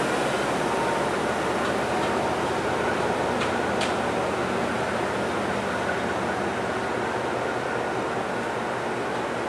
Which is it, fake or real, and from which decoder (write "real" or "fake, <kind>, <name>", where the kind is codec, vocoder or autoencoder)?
real